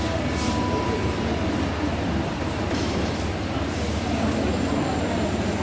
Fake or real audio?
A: fake